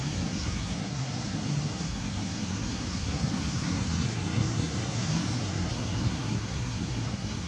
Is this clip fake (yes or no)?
yes